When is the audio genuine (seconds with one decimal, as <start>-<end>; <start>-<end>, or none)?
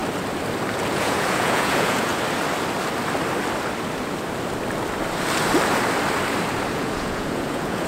0.0-0.9; 2.1-6.7